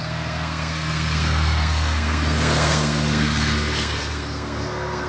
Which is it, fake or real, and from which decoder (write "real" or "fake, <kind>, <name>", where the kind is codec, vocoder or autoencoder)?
fake, codec, SNAC